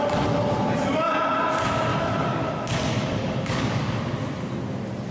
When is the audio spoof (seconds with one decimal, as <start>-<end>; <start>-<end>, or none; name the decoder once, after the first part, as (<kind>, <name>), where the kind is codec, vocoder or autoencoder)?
1.9-2.5 (codec, DAC); 3.0-4.0